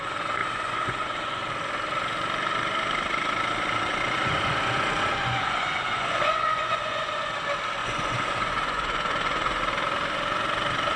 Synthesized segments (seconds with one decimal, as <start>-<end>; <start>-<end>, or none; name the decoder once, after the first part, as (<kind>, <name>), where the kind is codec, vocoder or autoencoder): 0.4-1.4 (vocoder, Vocos); 3.9-7.3; 7.8-9.6